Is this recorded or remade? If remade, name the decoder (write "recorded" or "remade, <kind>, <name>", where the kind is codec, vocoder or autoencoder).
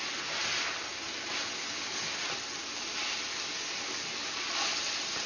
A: recorded